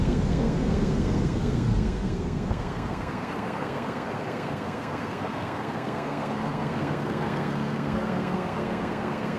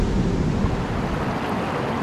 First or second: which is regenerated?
first